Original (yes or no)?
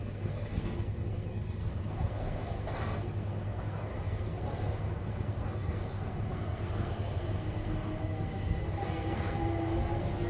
no